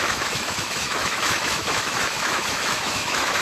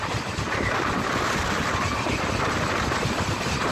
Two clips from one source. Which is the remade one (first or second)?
first